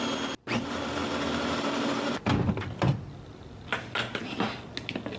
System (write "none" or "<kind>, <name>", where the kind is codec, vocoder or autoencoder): none